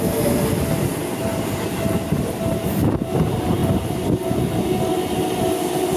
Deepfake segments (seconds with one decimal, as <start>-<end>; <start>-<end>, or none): none